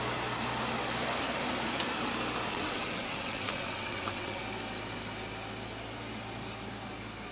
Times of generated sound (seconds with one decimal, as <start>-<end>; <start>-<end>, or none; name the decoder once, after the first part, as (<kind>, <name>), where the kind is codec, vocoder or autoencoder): 2.5-4.4 (vocoder, WaveNeXt)